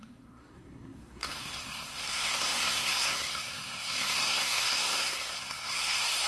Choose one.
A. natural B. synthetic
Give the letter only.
B